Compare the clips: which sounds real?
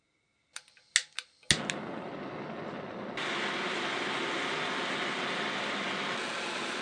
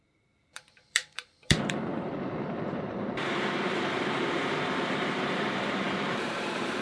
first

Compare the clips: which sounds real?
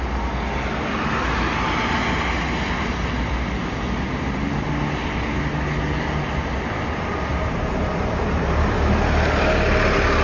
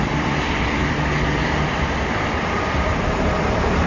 first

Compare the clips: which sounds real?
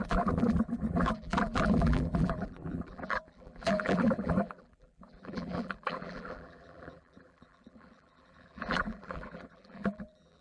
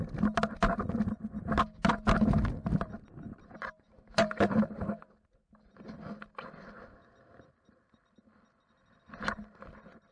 second